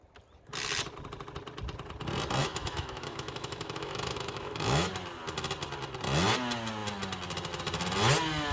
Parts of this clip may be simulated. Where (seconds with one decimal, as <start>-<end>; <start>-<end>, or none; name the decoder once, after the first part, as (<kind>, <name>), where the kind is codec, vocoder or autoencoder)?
2.4-4.9 (autoencoder, DAC-VAE)